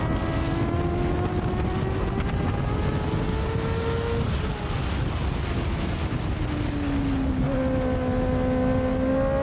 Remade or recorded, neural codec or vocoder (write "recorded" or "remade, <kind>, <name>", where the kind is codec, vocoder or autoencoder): recorded